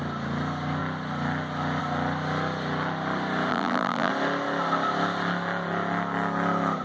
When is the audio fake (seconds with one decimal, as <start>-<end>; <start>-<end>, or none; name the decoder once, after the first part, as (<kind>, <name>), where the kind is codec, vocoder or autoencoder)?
3.5-4.1 (vocoder, BigVGAN v2)